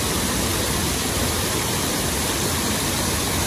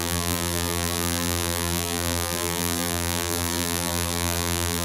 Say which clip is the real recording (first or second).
first